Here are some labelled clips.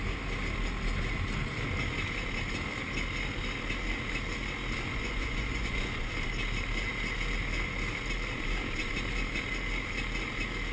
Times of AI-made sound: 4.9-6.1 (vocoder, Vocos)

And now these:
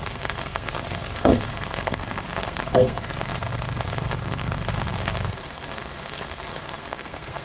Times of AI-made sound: 0.0-7.4 (codec, SNAC)

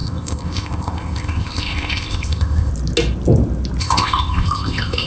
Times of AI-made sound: 0.0-2.7 (codec, ZipCodec); 3.8-5.1

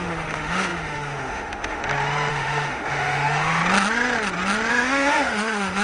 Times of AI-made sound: 0.0-1.8 (autoencoder, DAC-VAE); 2.3-3.6; 4.7-5.8

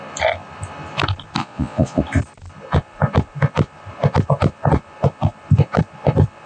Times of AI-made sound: 1.4-2.0 (vocoder, Vocos)

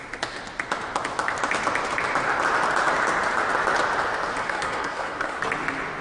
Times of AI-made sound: 4.4-5.4 (codec, SNAC)